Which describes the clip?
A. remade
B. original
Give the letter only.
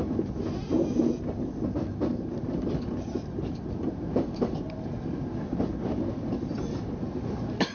B